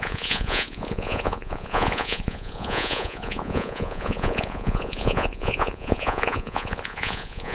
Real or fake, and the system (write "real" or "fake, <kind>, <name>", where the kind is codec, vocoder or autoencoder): fake, vocoder, Vocos